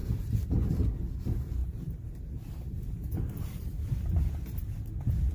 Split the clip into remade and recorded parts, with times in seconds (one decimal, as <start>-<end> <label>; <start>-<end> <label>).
0.0-0.7 remade; 0.7-1.6 recorded; 1.6-4.3 remade; 4.3-5.3 recorded